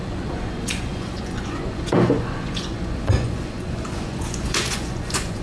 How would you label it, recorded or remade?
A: remade